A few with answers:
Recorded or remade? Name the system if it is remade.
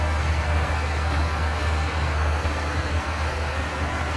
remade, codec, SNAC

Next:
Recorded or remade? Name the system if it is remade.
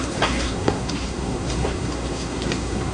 remade, codec, SNAC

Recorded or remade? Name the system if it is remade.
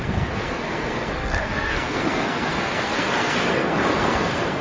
remade, codec, SNAC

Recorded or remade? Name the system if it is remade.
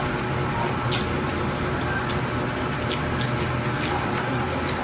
recorded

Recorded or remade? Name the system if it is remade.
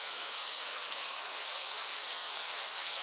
remade, codec, SNAC